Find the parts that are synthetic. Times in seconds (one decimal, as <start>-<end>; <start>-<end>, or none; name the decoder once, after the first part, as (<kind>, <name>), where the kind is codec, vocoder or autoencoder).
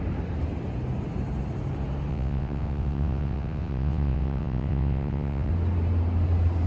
2.1-5.5 (vocoder, WaveNeXt)